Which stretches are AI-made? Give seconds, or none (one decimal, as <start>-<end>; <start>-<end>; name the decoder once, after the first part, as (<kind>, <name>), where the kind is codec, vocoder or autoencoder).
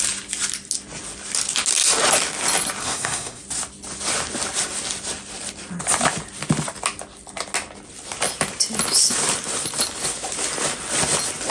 2.8-3.4 (codec, SNAC)